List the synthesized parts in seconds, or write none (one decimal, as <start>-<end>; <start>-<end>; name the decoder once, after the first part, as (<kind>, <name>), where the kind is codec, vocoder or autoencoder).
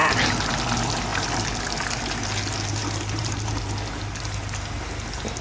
2.8-3.6 (vocoder, BigVGAN v2)